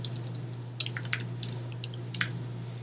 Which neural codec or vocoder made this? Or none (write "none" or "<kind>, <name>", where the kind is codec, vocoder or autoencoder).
none